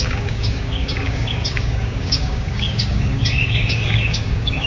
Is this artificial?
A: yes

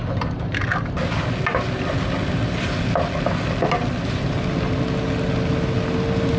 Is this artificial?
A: no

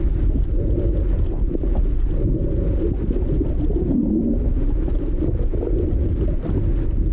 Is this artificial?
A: no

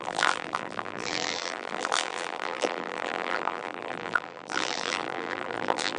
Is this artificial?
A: yes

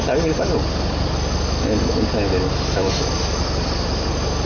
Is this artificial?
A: no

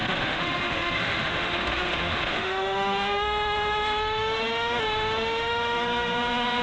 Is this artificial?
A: yes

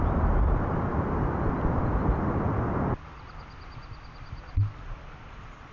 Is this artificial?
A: no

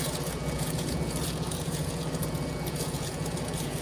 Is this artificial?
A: yes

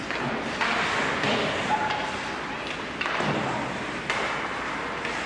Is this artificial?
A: no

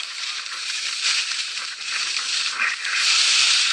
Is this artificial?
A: yes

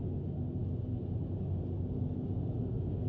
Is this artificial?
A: no